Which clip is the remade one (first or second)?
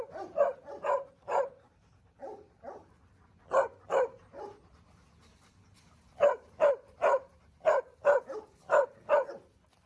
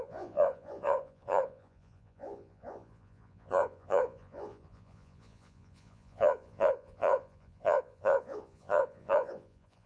second